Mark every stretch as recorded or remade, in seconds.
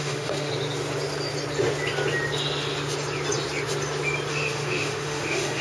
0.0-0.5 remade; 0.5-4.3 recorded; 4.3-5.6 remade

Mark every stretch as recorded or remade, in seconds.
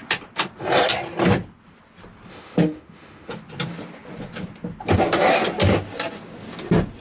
0.0-2.3 recorded; 2.3-3.4 remade; 3.4-7.0 recorded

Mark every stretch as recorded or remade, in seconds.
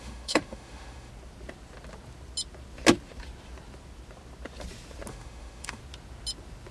0.0-1.1 remade; 1.1-5.1 recorded; 5.1-5.8 remade; 5.8-6.7 recorded